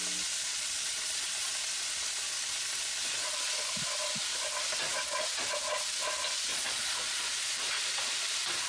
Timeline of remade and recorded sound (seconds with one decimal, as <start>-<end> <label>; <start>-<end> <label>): 0.0-0.5 recorded; 0.5-1.5 remade; 1.5-6.5 recorded; 6.5-7.2 remade; 7.2-8.7 recorded